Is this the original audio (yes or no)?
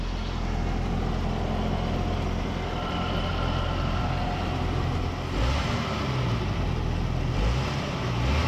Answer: yes